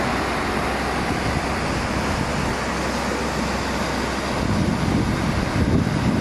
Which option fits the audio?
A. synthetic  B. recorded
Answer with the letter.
B